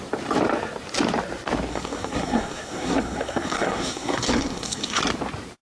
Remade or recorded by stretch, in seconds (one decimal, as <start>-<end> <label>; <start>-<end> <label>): 0.0-1.7 recorded; 1.7-5.0 remade; 5.0-5.6 recorded